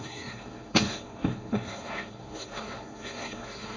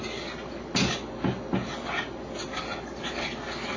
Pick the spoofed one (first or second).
first